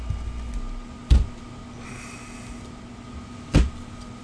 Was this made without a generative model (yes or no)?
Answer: yes